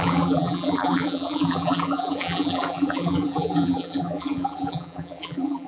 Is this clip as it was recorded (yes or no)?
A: no